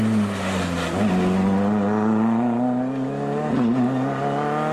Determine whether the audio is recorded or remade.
recorded